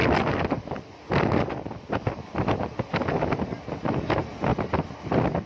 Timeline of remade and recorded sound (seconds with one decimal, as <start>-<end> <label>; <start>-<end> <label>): 0.0-5.5 recorded